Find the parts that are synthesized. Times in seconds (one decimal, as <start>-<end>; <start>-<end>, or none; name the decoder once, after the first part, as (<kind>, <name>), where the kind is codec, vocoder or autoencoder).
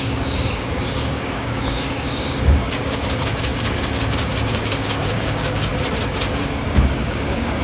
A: 0.0-5.7 (codec, DAC); 6.4-7.6